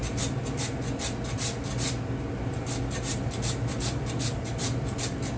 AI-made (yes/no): no